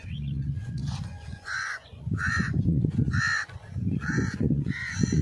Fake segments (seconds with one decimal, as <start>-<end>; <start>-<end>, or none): 0.0-5.2